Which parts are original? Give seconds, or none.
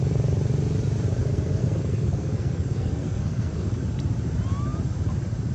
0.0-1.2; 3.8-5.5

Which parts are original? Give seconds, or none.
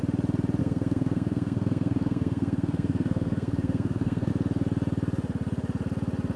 0.0-0.6; 4.3-6.4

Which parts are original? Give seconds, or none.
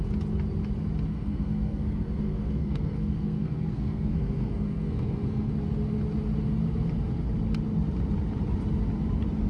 0.0-1.1; 5.5-9.5